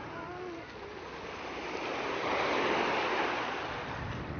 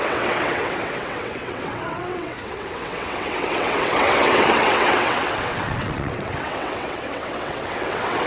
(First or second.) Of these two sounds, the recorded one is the first